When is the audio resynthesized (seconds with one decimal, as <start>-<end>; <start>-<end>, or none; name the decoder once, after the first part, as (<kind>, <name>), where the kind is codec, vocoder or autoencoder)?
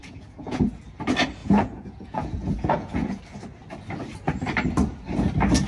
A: 0.0-0.6 (vocoder, Vocos); 1.4-3.2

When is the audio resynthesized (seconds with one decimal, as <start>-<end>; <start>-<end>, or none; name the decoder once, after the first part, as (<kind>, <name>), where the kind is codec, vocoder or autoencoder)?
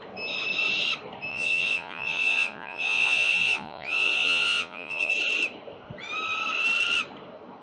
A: 1.3-5.1 (vocoder, Vocos)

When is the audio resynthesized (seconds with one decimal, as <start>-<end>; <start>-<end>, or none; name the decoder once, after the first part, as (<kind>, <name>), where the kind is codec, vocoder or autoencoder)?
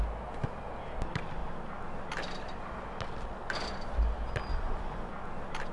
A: 4.5-5.1 (vocoder, Vocos)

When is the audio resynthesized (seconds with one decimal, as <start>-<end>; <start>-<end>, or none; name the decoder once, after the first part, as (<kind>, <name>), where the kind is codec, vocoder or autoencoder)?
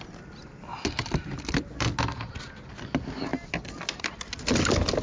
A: none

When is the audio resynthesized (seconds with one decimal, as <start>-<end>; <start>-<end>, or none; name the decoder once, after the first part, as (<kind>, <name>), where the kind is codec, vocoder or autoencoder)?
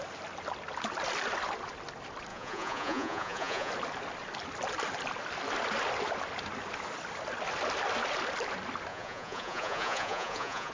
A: 2.3-3.7 (vocoder, Vocos); 8.9-10.7